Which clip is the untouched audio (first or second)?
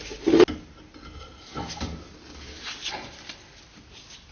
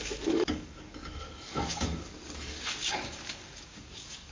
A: first